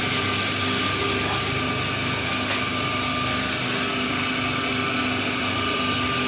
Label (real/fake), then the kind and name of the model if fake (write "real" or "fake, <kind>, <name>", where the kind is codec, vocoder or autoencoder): real